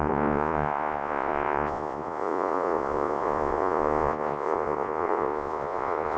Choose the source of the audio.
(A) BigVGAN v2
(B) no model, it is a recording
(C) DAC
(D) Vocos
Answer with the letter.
D